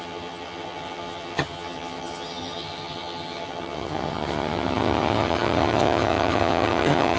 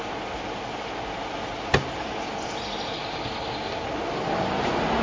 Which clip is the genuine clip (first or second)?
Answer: second